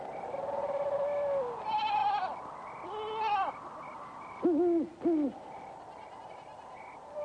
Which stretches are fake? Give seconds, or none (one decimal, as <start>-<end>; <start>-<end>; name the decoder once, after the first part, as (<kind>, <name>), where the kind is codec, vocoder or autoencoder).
none